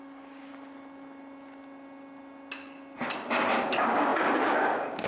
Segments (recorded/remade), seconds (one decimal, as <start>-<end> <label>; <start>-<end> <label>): 0.0-0.5 remade; 0.5-3.6 recorded; 3.6-5.1 remade